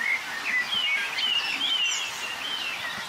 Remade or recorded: recorded